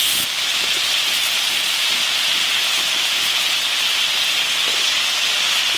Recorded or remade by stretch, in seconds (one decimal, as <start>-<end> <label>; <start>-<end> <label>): 0.0-0.5 recorded; 0.5-4.0 remade; 4.0-5.8 recorded